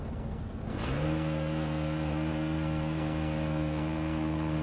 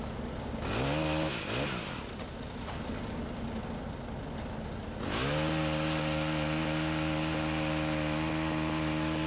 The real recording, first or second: second